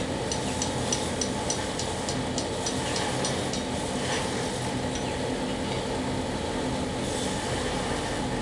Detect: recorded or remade recorded